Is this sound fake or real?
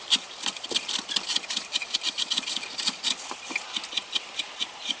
fake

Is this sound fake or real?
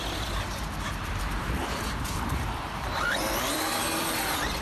fake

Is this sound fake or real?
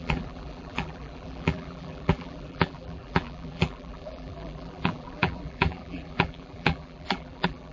fake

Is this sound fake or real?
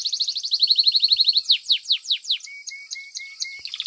real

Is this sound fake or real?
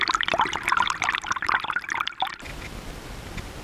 fake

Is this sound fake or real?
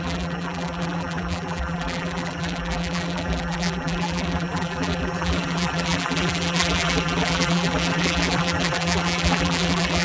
fake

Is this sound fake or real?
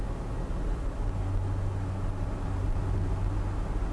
real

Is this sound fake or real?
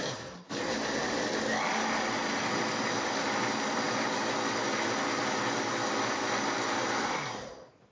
real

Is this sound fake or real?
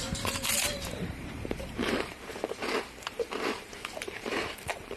fake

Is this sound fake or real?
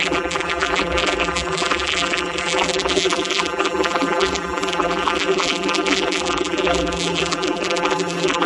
fake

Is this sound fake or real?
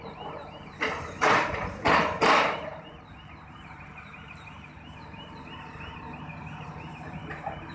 fake